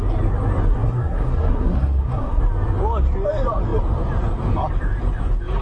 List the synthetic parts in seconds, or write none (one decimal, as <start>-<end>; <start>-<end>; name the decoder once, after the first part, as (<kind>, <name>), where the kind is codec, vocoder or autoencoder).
0.7-2.4 (codec, SNAC)